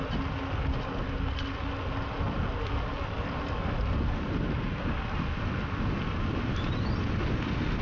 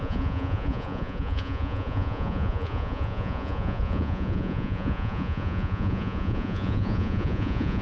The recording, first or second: first